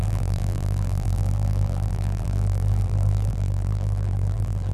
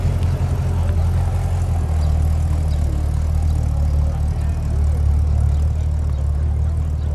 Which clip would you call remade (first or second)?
first